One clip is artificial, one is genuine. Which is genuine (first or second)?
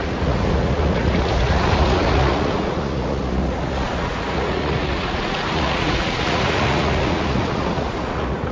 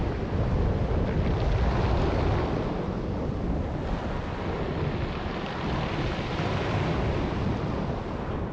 second